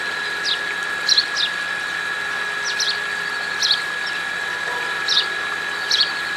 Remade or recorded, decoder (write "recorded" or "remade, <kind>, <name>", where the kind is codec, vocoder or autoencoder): remade, vocoder, BigVGAN v2